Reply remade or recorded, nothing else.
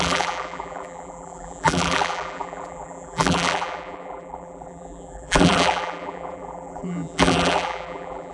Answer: remade